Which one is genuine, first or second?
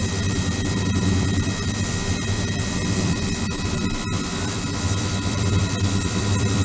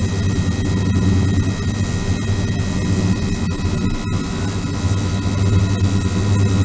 second